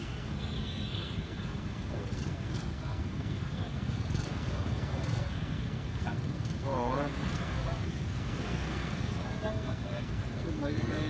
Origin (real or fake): fake